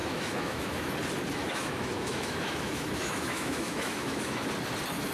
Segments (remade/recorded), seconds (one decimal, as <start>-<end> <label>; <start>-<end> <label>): 0.0-0.9 remade; 0.9-1.4 recorded; 1.4-4.5 remade; 4.5-5.1 recorded